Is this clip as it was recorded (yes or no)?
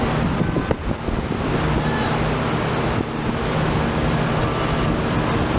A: yes